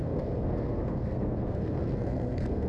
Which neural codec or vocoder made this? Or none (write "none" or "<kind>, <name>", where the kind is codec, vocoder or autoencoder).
codec, SNAC